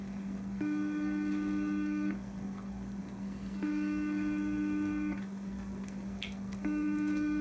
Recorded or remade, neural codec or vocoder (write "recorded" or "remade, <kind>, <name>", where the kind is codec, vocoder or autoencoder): remade, codec, SNAC